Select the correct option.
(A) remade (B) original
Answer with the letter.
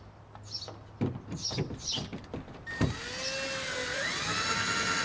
B